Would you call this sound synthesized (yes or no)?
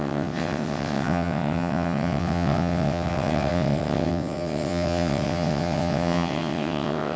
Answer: yes